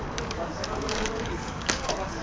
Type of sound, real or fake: fake